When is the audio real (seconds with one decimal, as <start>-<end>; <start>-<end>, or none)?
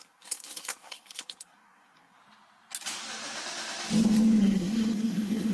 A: 2.2-4.4